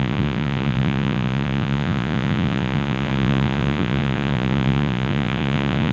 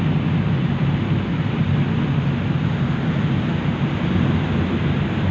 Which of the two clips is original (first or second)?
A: second